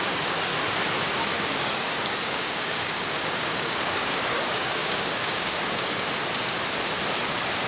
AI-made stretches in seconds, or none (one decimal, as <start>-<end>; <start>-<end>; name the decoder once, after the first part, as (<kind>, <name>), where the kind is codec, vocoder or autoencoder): 0.0-0.5 (codec, DAC); 1.4-6.2